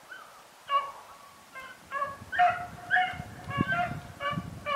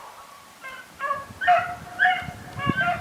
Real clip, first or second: first